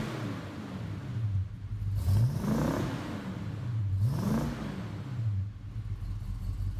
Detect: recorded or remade recorded